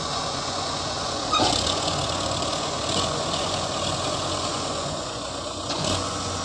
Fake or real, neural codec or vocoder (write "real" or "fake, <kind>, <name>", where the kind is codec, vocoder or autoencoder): fake, vocoder, Vocos